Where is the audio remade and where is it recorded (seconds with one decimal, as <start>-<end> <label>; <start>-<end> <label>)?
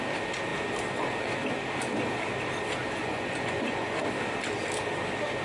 0.0-3.0 recorded; 3.0-4.0 remade; 4.0-5.4 recorded